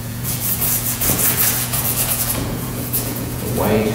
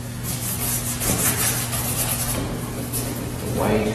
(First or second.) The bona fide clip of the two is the second